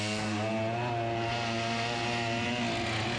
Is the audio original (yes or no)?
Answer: yes